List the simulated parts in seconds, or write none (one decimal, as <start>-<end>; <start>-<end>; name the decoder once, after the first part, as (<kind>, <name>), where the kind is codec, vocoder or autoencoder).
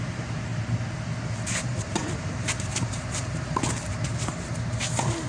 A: 0.0-0.5 (vocoder, BigVGAN v2); 1.6-5.3